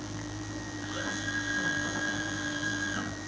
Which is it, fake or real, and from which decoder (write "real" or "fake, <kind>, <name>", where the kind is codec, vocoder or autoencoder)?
fake, vocoder, BigVGAN v2